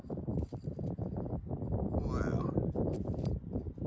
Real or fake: real